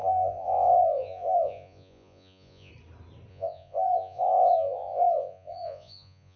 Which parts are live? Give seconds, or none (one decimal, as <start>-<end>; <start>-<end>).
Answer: 2.7-3.3